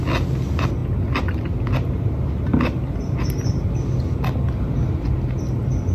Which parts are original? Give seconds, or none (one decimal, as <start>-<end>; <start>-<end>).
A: 0.0-5.9